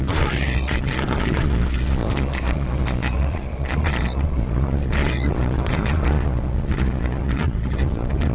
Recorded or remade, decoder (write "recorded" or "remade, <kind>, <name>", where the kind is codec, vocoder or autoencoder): remade, vocoder, Vocos